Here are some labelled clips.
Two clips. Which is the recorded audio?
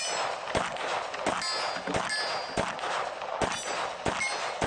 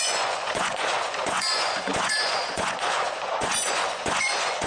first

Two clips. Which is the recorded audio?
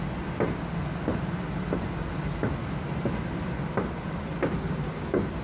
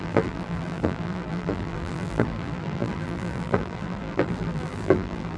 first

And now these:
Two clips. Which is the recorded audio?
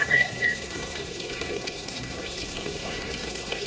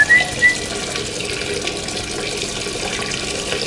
second